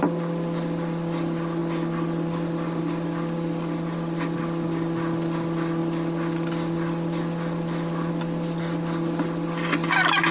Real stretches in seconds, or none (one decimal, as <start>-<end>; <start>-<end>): 0.0-10.3